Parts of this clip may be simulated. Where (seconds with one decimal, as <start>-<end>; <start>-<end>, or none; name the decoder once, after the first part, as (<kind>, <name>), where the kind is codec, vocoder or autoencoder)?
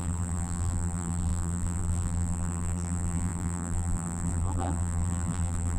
0.0-5.8 (vocoder, BigVGAN v2)